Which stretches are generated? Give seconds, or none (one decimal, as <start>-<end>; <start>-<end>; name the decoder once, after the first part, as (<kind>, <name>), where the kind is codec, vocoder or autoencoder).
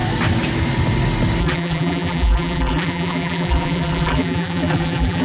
1.4-5.2 (vocoder, BigVGAN v2)